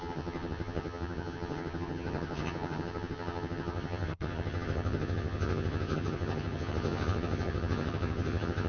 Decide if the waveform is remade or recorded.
remade